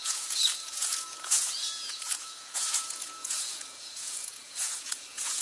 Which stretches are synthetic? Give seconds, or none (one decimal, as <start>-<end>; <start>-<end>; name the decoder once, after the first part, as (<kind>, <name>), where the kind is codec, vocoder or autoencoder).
0.0-5.4 (vocoder, Vocos)